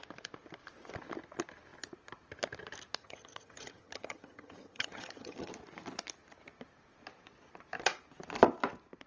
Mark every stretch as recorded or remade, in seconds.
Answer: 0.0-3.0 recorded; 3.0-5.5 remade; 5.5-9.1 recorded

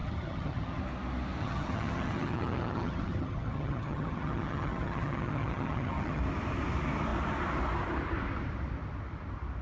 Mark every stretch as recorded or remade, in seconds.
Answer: 0.0-0.8 remade; 0.8-1.4 recorded; 1.4-6.2 remade; 6.2-9.6 recorded

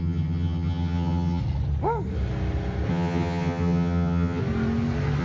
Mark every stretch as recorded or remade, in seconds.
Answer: 0.0-1.4 remade; 1.4-2.9 recorded; 2.9-4.4 remade; 4.4-5.2 recorded

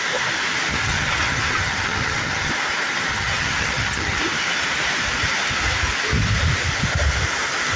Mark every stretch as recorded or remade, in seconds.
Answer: 0.0-0.7 recorded; 0.7-2.5 remade; 2.5-3.1 recorded; 3.1-4.2 remade; 4.2-7.8 recorded

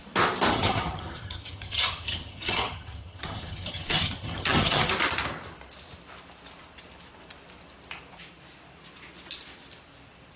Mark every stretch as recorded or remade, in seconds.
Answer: 0.0-0.5 recorded; 0.5-4.9 remade; 4.9-10.4 recorded